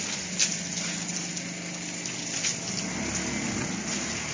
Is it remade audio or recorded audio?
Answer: recorded